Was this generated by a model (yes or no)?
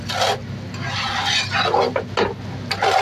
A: no